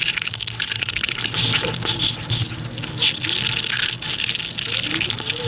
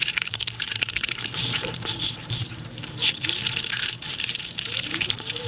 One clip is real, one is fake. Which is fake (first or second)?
second